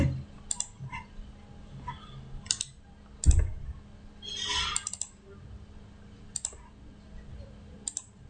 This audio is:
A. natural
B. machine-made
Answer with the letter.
A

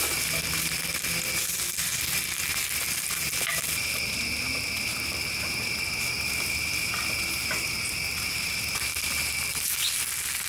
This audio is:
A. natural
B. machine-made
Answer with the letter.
A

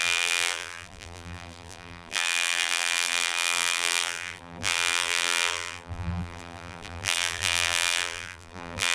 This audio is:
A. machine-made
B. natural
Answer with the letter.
A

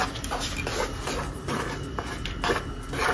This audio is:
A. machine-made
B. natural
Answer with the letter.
B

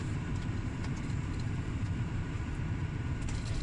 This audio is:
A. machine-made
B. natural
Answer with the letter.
A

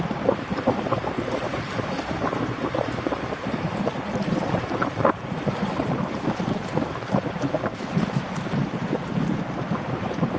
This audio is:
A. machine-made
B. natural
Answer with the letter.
A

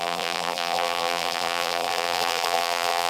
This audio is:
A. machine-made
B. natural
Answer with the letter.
A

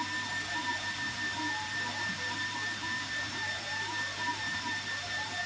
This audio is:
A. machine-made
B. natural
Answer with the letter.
A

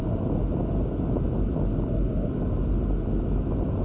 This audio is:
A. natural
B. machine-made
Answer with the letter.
A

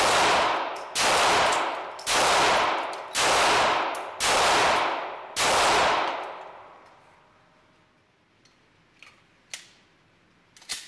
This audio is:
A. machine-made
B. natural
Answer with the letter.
B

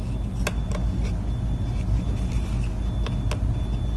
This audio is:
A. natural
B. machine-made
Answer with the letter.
A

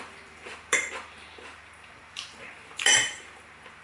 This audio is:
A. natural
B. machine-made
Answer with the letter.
B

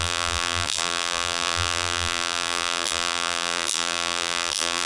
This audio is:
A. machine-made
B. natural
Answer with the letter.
A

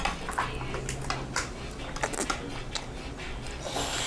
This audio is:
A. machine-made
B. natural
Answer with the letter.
B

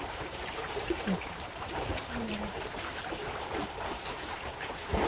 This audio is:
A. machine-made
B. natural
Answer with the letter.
A